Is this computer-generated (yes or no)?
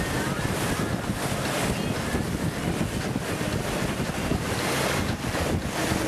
no